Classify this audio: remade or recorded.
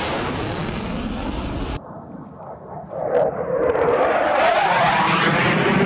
recorded